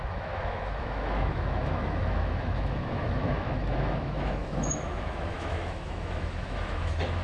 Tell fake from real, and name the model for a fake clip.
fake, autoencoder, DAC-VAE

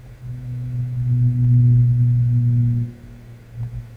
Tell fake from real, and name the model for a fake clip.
fake, autoencoder, DAC-VAE